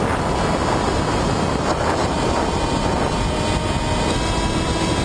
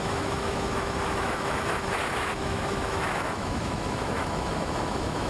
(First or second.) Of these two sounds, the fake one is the second